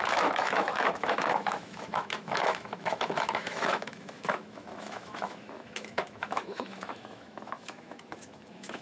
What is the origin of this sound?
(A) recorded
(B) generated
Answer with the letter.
B